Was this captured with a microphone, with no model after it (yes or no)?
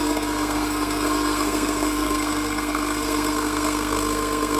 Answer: no